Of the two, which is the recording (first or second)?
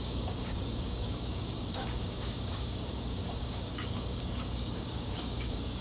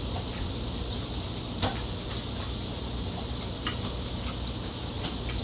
second